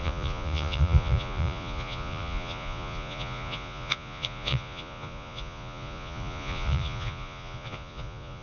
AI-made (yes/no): yes